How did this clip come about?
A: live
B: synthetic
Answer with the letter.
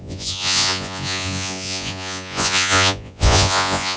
B